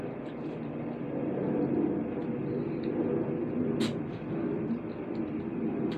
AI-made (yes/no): no